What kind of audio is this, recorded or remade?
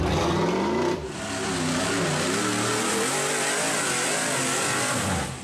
recorded